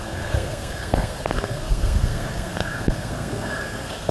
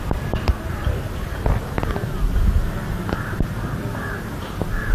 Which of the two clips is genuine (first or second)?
second